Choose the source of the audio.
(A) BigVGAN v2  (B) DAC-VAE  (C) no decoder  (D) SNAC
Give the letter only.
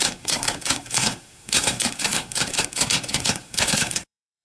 D